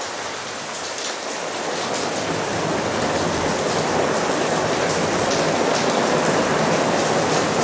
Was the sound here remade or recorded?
recorded